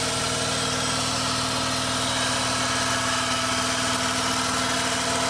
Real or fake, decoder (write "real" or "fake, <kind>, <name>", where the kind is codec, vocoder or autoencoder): real